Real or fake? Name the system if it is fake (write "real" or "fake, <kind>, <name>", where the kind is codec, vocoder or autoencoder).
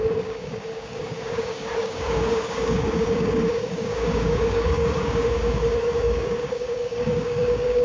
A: fake, codec, DAC